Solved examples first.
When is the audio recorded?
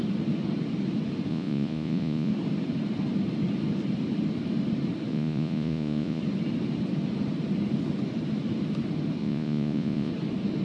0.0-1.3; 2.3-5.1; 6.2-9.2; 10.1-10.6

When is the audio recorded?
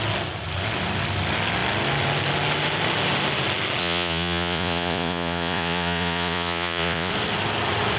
0.0-3.8; 7.1-8.0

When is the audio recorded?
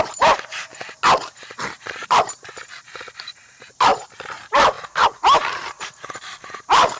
0.7-1.8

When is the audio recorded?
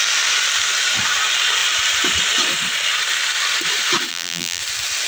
0.0-4.1; 4.6-5.1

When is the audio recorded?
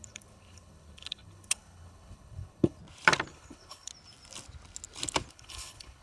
2.8-3.3; 3.9-5.3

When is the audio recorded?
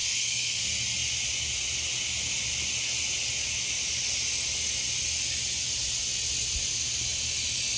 0.6-7.8